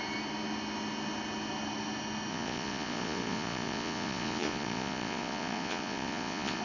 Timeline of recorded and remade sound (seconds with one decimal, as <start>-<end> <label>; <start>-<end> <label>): 0.0-2.3 recorded; 2.3-6.6 remade